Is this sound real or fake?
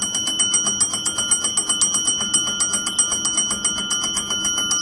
real